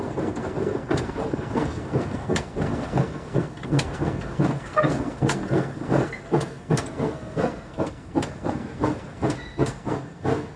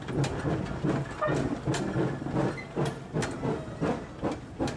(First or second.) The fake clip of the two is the first